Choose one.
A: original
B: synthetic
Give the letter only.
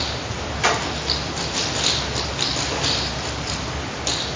A